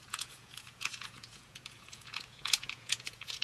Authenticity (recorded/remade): remade